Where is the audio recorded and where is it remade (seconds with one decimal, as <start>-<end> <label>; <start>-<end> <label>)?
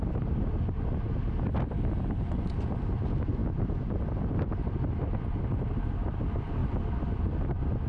0.0-6.6 recorded; 6.6-7.9 remade